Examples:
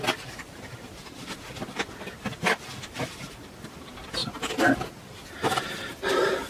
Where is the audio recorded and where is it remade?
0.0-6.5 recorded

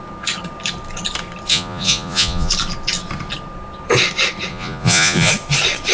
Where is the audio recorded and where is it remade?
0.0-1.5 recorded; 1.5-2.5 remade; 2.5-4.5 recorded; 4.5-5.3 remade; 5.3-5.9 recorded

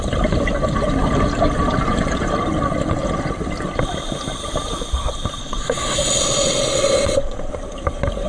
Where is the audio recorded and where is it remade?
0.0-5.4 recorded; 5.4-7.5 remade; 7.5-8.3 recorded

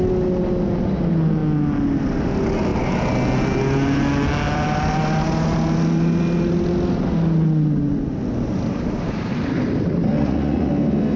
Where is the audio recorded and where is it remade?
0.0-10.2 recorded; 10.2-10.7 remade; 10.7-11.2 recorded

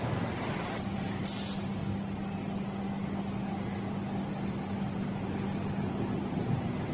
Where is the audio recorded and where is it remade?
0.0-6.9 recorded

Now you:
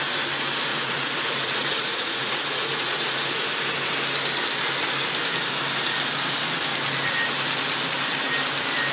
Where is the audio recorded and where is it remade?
0.0-0.7 recorded; 0.7-3.4 remade; 3.4-8.9 recorded

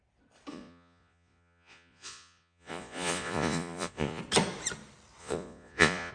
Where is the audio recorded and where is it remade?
0.0-0.5 recorded; 0.5-4.2 remade; 4.2-5.2 recorded; 5.2-6.1 remade

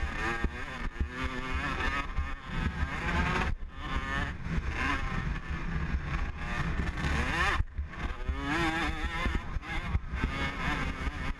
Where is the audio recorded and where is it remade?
0.0-9.2 recorded; 9.2-10.2 remade; 10.2-11.4 recorded